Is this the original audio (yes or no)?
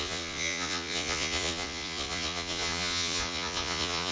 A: no